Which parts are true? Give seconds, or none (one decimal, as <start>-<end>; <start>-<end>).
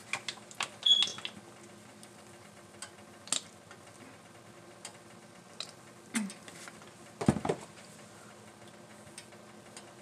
0.0-10.0